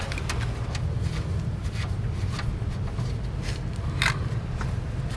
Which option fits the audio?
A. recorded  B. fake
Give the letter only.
A